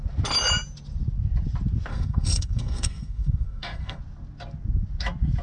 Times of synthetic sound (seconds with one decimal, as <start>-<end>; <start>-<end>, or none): 1.9-4.0